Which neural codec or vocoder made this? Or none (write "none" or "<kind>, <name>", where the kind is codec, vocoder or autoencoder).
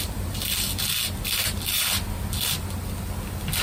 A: none